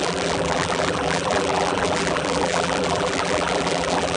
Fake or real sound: fake